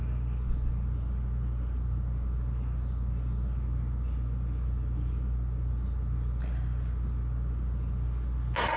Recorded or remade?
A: recorded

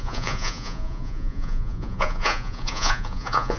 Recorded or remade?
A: remade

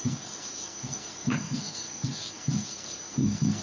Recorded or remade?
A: remade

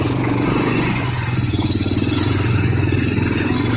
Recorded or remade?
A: remade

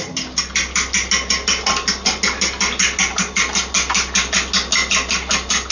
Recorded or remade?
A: recorded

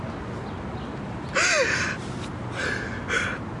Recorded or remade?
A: recorded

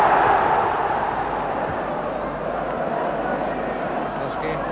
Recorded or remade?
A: recorded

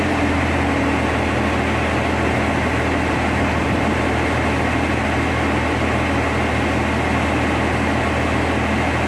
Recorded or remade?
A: recorded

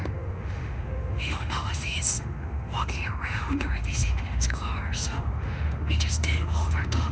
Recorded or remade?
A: remade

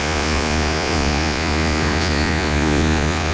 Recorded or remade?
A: remade